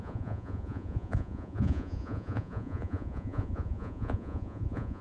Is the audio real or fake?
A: fake